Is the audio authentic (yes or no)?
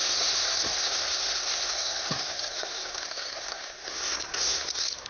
no